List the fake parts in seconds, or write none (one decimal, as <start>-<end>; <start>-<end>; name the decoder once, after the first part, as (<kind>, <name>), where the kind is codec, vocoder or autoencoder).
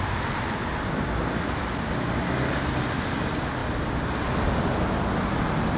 none